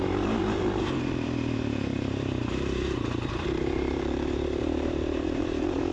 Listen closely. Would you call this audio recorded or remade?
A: remade